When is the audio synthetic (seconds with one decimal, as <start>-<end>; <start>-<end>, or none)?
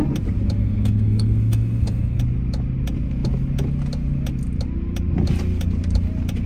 0.6-2.2